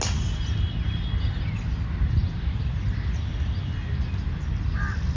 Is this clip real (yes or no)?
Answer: yes